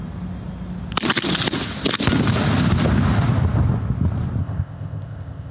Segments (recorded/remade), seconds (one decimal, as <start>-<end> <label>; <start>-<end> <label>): 0.0-4.4 recorded; 4.4-5.5 remade